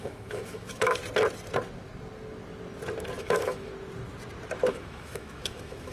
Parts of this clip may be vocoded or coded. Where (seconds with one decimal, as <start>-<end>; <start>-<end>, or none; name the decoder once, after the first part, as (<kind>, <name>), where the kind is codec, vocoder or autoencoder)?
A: 0.0-1.0 (autoencoder, DAC-VAE); 3.2-3.7; 4.7-5.9